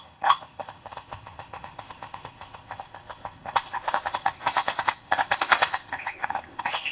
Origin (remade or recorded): remade